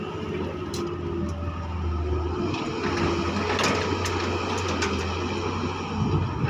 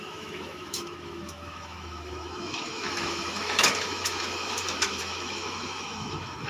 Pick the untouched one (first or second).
first